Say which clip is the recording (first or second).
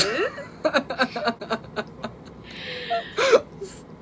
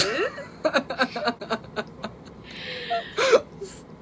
first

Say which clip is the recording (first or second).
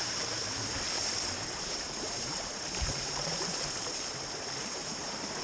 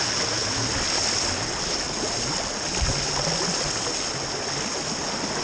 second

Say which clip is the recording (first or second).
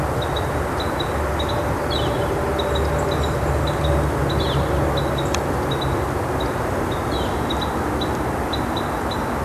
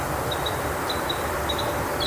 first